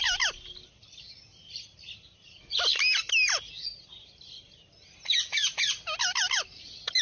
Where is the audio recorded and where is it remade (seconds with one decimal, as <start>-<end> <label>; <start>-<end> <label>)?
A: 0.0-2.7 remade; 2.7-5.7 recorded; 5.7-7.0 remade